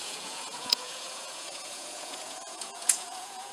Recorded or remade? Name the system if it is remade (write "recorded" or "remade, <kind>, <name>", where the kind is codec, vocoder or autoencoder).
remade, vocoder, Vocos